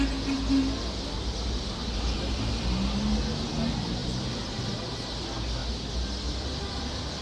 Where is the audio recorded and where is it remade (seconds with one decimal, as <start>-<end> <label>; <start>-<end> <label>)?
0.0-1.8 recorded; 1.8-2.5 remade; 2.5-4.0 recorded; 4.0-4.8 remade; 4.8-7.2 recorded